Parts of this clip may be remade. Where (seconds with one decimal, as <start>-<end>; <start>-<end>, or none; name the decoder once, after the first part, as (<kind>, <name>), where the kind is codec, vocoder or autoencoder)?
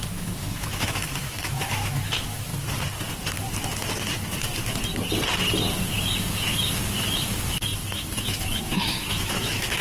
0.0-2.5 (autoencoder, DAC-VAE); 6.0-9.8